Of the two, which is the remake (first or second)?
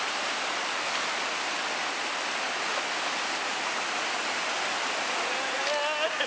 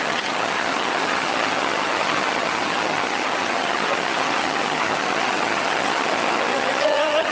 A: second